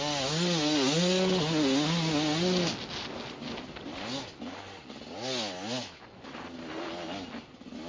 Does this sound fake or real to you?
real